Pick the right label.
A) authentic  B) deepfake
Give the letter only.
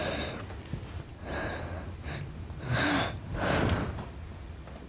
A